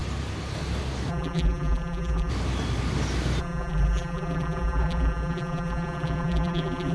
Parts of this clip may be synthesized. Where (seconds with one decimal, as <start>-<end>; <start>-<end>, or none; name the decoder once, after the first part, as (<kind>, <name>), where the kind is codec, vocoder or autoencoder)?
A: 1.1-2.3 (vocoder, BigVGAN v2); 3.4-6.9